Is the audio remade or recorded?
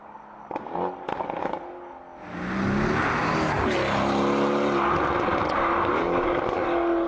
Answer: recorded